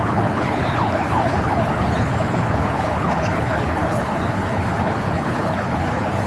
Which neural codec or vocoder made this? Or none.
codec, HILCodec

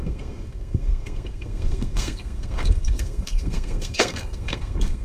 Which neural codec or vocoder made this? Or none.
codec, SNAC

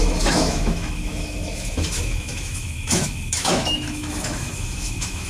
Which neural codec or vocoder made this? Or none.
autoencoder, DAC-VAE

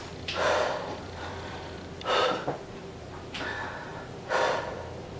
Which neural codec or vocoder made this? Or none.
vocoder, BigVGAN v2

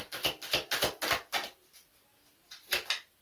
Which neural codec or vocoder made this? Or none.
none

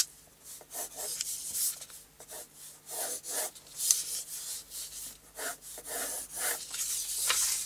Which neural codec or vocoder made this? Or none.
none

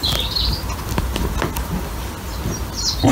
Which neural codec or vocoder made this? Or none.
none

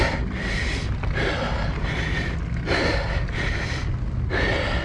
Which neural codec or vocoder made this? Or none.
none